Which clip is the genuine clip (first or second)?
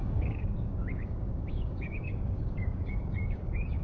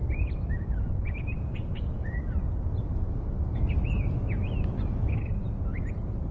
second